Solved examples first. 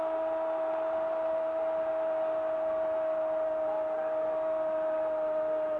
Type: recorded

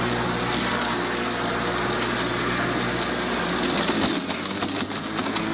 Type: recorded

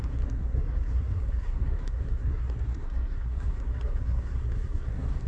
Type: remade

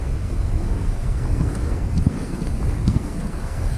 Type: remade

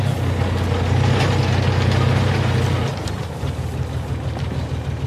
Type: recorded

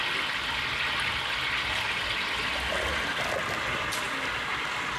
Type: recorded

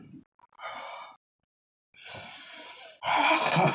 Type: recorded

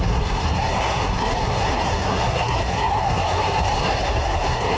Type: remade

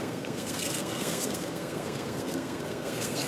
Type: remade